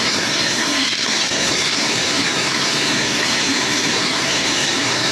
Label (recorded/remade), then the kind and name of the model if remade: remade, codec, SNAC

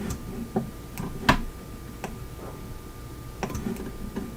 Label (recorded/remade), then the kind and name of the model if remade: recorded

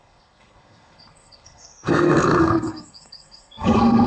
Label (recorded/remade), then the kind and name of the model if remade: remade, codec, SNAC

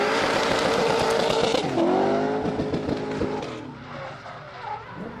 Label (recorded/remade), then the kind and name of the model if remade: recorded